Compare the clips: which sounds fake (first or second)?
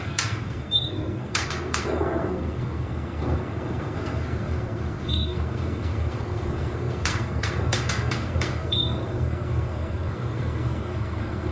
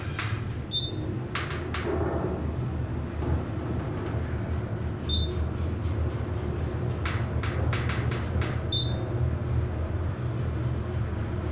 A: first